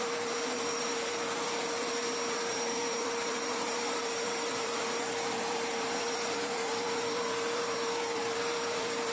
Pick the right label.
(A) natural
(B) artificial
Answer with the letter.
B